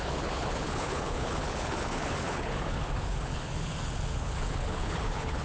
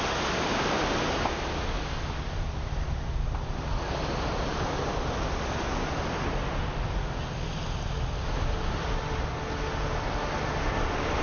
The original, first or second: second